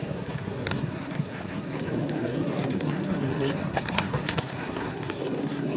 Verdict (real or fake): fake